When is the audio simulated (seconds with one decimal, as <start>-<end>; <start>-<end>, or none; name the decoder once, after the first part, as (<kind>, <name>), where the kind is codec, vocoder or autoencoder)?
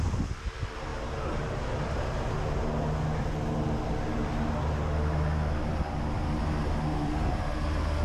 none